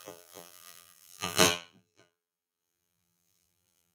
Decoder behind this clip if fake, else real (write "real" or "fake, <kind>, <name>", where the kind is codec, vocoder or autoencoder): fake, vocoder, BigVGAN v2